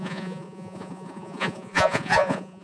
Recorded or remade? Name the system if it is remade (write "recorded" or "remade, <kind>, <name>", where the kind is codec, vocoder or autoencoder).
remade, vocoder, Vocos